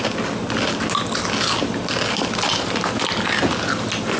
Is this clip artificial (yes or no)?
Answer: no